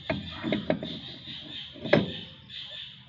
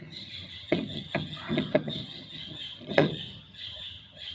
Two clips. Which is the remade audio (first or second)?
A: second